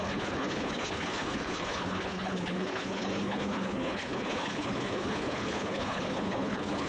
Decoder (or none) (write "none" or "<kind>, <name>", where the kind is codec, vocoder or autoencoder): codec, HILCodec